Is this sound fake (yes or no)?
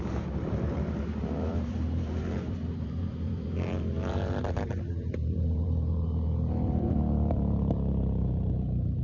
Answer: yes